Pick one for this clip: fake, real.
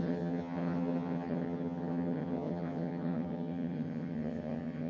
fake